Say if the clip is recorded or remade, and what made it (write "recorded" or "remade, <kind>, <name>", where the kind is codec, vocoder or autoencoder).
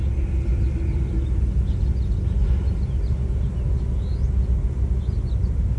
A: recorded